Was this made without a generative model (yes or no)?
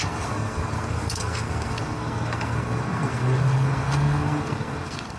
no